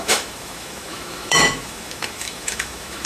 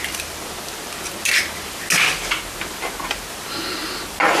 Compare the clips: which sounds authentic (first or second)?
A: second